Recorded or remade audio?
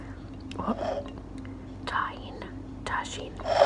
recorded